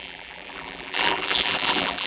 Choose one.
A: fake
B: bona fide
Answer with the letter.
A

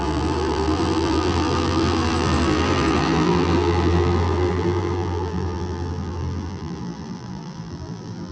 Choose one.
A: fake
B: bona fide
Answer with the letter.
A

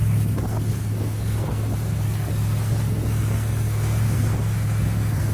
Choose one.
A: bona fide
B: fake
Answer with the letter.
B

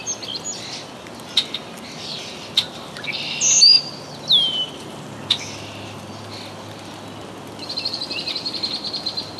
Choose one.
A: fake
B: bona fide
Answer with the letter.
B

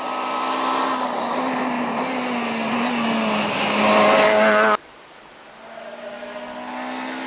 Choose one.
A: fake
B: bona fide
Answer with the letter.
B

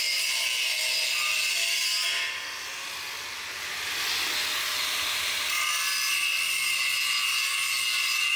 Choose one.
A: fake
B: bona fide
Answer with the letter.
B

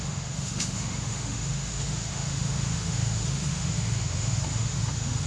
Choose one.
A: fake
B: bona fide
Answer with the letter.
A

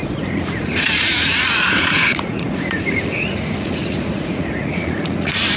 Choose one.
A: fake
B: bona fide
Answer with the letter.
A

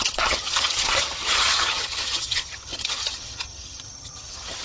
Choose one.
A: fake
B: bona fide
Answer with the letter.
A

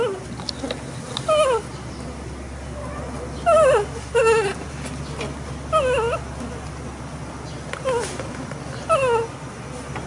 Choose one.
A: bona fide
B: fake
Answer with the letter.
A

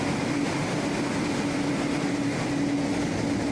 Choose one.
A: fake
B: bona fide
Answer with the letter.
B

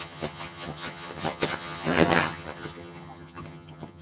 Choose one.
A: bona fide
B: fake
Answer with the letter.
B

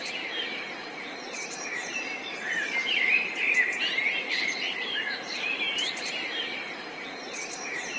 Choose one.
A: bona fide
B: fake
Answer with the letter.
B